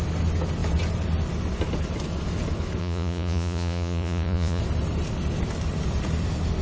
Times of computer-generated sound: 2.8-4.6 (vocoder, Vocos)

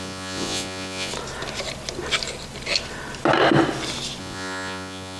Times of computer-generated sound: 0.0-1.1 (vocoder, Vocos); 4.2-5.2

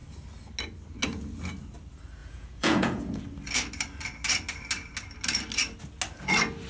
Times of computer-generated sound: 2.2-3.2 (vocoder, Vocos)

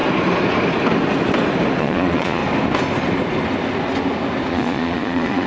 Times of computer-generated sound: 1.8-2.4 (vocoder, Vocos); 4.5-5.5